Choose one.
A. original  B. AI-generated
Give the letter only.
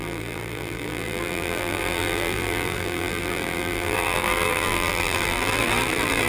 B